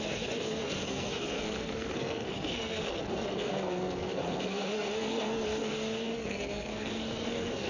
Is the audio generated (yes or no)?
yes